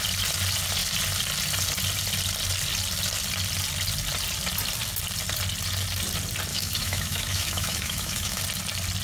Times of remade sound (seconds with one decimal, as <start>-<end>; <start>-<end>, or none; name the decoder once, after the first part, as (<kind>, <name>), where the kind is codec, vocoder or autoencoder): 6.5-8.4 (autoencoder, DAC-VAE)